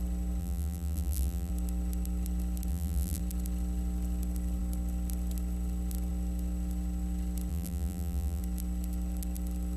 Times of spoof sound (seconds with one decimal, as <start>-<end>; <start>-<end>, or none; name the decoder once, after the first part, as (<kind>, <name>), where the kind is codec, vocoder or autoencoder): 0.4-1.5 (vocoder, BigVGAN v2); 2.7-3.2; 7.5-8.4